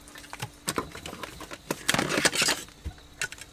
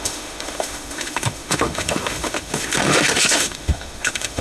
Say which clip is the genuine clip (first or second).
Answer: first